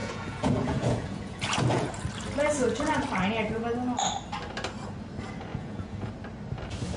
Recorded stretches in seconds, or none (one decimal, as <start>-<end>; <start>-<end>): 1.9-5.5; 6.1-7.0